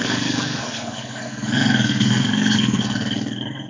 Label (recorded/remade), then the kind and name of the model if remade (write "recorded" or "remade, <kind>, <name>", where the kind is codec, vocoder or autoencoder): remade, codec, SNAC